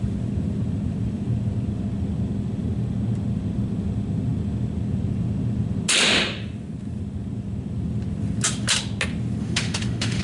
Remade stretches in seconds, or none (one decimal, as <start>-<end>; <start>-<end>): 9.4-10.2

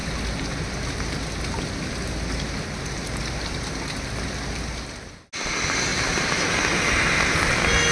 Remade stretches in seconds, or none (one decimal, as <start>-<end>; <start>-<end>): none

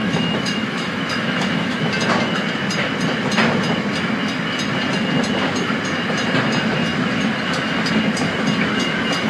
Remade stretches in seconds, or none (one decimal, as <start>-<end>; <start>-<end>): 0.0-1.9

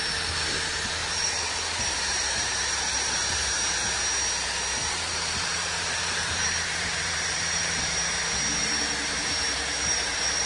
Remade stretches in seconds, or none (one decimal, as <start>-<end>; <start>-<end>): 1.0-3.5; 4.8-8.0; 8.6-10.5

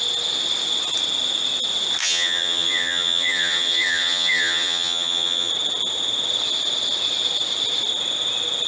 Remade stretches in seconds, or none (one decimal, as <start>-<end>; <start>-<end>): 2.0-5.5